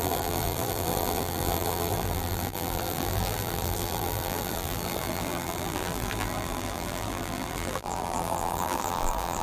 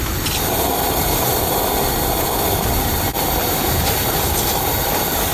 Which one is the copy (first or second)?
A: first